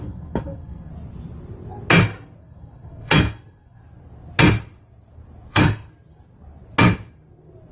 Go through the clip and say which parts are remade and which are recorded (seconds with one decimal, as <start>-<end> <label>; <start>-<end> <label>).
0.0-0.9 remade; 0.9-2.4 recorded; 2.4-3.8 remade; 3.8-5.5 recorded; 5.5-5.9 remade; 5.9-7.7 recorded

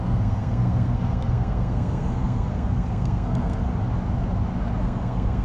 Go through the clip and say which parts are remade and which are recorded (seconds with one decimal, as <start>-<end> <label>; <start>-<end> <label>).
0.0-3.7 remade; 3.7-4.8 recorded; 4.8-5.4 remade

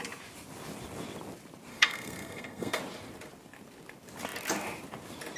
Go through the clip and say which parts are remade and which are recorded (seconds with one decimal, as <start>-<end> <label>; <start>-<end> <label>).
0.0-1.7 recorded; 1.7-2.8 remade; 2.8-5.4 recorded

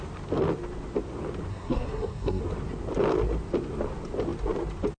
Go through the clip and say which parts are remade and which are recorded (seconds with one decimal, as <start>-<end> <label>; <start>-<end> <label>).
0.0-1.5 recorded; 1.5-2.4 remade; 2.4-5.0 recorded

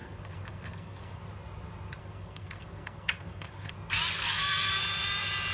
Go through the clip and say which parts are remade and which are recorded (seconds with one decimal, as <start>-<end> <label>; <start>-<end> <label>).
0.0-1.2 remade; 1.2-2.0 recorded; 2.0-3.7 remade; 3.7-4.2 recorded; 4.2-4.7 remade; 4.7-5.5 recorded

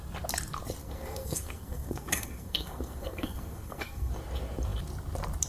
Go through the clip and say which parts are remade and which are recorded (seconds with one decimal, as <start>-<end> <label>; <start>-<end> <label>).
0.0-0.8 recorded; 0.8-4.1 remade; 4.1-5.5 recorded

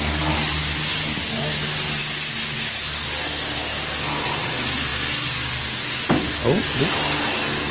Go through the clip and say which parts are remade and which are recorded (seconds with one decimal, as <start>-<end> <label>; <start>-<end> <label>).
0.0-7.7 recorded

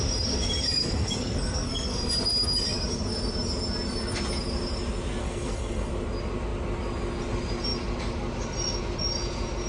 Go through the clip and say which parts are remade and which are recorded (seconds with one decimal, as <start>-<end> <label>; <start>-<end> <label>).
0.0-0.8 recorded; 0.8-2.1 remade; 2.1-5.2 recorded; 5.2-5.9 remade; 5.9-9.7 recorded